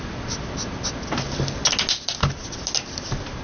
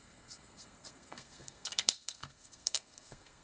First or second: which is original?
first